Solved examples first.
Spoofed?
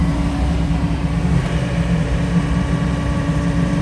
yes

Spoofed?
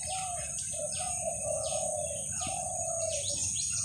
yes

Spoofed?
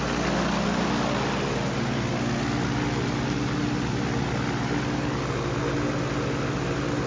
no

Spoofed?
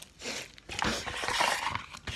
no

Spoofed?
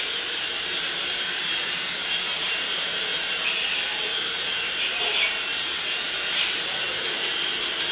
yes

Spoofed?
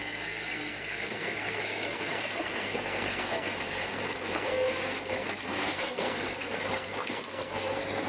yes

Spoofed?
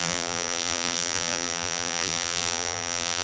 yes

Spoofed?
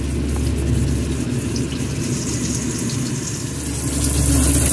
no